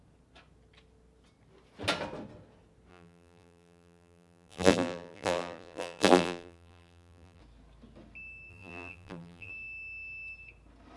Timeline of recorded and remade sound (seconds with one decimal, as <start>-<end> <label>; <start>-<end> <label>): 0.0-2.9 recorded; 2.9-7.4 remade; 7.4-8.5 recorded; 8.5-9.5 remade; 9.5-11.0 recorded